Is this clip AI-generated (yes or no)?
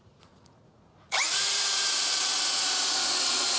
yes